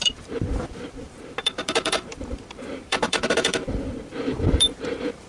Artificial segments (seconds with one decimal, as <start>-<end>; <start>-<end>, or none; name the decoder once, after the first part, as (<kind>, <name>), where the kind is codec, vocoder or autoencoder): 0.0-5.3 (vocoder, BigVGAN v2)